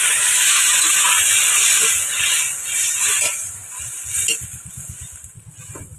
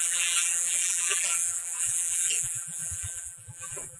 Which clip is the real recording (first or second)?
first